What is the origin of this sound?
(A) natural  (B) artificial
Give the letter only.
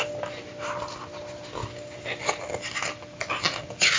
A